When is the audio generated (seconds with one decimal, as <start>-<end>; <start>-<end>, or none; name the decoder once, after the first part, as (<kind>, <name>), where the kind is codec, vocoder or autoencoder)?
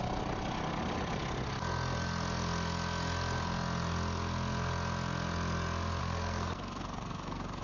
6.0-7.6 (codec, SNAC)